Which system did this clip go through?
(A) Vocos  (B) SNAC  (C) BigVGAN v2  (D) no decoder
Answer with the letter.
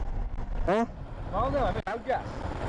D